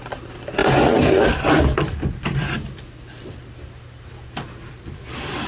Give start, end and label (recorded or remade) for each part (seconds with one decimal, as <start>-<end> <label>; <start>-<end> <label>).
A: 0.0-5.5 recorded